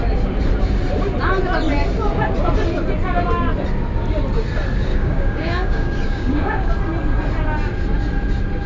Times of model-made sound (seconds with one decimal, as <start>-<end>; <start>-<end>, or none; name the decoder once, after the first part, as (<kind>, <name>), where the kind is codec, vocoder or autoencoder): 4.9-6.7 (codec, DAC)